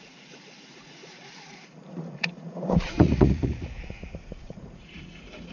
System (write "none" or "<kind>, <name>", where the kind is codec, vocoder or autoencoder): vocoder, Vocos